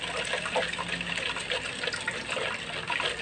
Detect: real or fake real